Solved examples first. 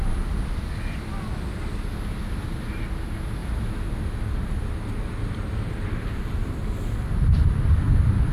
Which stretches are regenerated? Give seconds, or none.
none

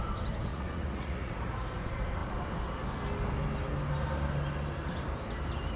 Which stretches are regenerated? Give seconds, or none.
0.5-1.3

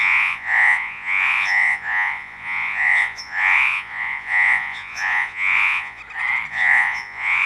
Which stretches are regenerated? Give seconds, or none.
0.0-6.0; 6.5-7.5

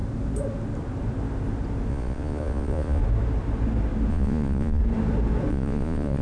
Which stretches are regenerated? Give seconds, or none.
1.9-3.0; 4.1-4.8; 5.5-6.2

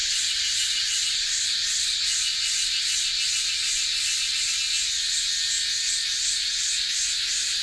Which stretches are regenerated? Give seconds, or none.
0.0-4.6; 6.4-6.9